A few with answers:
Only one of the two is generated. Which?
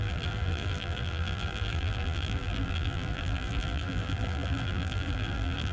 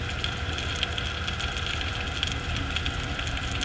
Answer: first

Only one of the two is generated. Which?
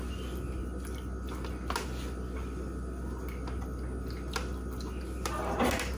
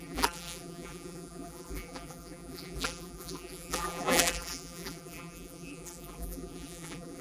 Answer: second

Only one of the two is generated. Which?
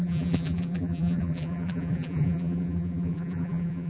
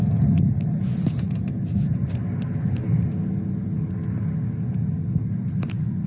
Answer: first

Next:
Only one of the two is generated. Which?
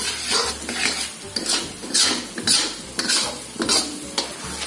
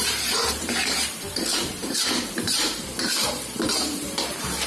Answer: second